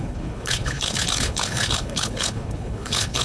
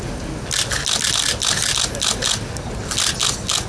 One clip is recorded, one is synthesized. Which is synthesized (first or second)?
first